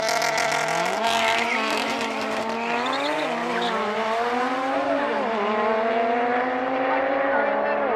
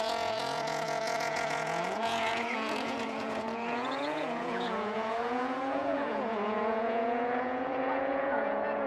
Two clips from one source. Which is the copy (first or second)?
second